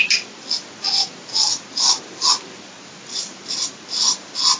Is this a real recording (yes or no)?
yes